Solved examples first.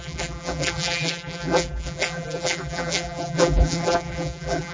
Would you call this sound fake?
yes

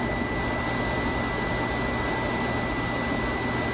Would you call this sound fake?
no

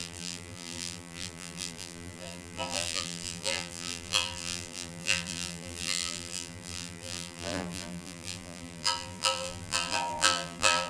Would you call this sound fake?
yes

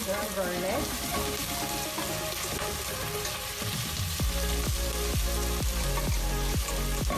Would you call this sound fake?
no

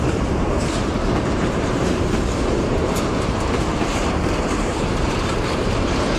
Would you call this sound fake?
yes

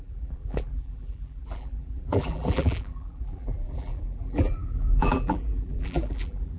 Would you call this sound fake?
yes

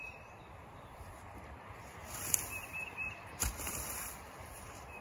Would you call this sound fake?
yes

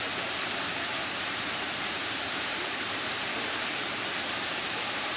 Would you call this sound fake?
yes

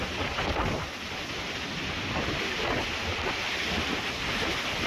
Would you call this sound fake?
no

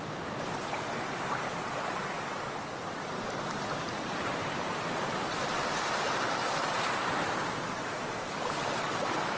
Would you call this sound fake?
yes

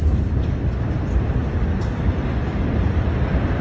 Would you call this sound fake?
no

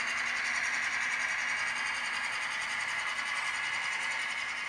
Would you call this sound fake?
no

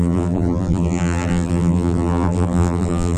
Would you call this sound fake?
yes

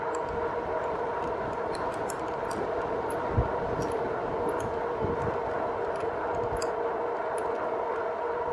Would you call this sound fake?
no